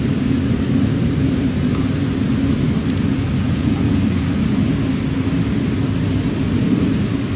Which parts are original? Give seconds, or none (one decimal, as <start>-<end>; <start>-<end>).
0.0-3.4; 4.0-7.4